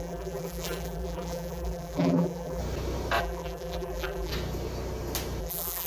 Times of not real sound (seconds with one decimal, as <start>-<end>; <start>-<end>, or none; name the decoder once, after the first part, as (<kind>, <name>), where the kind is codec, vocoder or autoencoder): 0.0-2.6 (vocoder, BigVGAN v2); 3.2-4.3; 5.4-5.9